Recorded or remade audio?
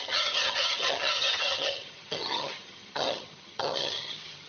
remade